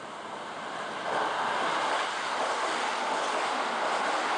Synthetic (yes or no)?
no